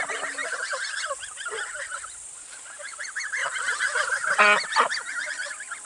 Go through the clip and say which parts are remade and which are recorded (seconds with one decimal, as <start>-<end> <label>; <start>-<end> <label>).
0.0-5.8 recorded